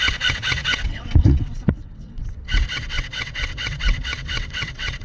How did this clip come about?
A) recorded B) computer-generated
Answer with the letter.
B